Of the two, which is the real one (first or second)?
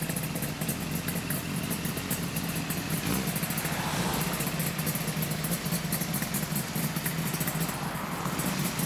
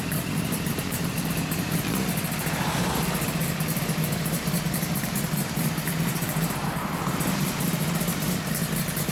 first